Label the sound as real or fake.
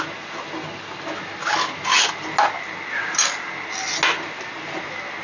real